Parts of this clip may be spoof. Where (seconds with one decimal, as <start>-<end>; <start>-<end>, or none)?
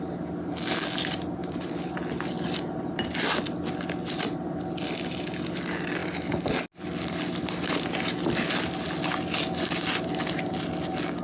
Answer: none